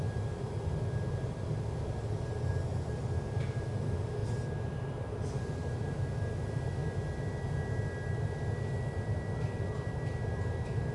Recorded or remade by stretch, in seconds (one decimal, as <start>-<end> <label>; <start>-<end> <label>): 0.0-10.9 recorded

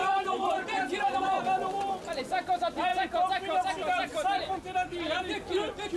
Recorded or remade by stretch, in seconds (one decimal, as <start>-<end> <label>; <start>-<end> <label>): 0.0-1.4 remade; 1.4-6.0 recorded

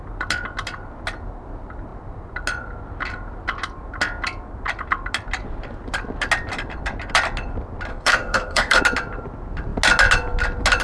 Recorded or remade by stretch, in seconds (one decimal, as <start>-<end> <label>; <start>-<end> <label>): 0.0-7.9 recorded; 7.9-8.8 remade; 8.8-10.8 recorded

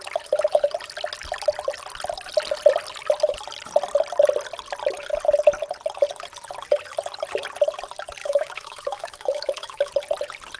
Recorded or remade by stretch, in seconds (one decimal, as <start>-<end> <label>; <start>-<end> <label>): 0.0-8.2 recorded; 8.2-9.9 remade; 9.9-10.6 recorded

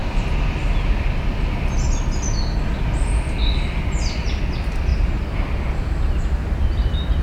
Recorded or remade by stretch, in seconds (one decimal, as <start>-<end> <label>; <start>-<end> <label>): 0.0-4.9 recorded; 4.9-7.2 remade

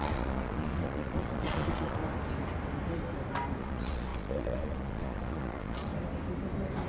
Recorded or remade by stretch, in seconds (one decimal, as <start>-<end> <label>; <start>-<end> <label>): 0.0-2.0 remade; 2.0-3.6 recorded; 3.6-5.9 remade; 5.9-6.9 recorded

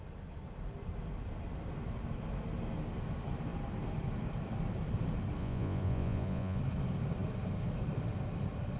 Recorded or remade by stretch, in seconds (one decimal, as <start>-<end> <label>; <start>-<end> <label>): 0.0-5.4 recorded; 5.4-6.6 remade; 6.6-8.8 recorded